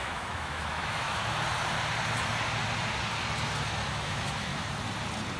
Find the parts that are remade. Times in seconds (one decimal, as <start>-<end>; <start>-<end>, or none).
0.0-1.2; 3.9-4.5